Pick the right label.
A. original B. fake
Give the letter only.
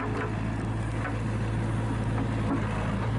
A